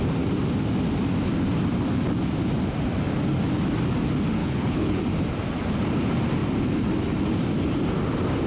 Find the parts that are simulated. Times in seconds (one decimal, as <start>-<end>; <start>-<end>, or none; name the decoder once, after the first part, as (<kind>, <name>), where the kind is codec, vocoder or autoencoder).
4.4-5.0 (codec, HILCodec)